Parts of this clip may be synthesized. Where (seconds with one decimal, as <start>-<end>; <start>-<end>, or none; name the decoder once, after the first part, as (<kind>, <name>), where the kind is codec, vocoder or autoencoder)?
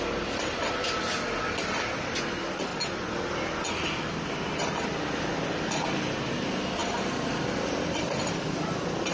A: none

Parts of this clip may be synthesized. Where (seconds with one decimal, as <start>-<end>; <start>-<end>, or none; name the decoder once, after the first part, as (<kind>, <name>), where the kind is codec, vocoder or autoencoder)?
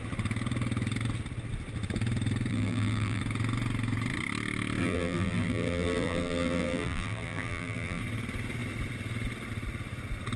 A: 2.5-3.2 (vocoder, BigVGAN v2); 4.8-8.0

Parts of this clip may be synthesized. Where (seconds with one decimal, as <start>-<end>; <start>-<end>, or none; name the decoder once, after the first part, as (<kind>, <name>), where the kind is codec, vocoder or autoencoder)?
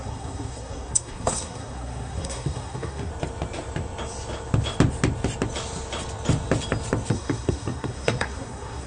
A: 0.0-3.1 (codec, SNAC); 7.1-8.9